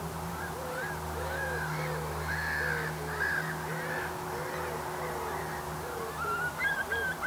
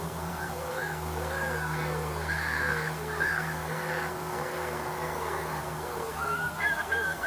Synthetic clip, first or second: second